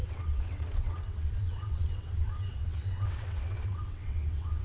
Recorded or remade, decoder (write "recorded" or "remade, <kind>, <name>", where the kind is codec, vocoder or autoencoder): remade, vocoder, WaveNeXt